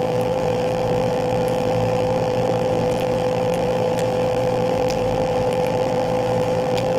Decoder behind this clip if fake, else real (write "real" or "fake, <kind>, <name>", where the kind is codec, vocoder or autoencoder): fake, vocoder, BigVGAN v2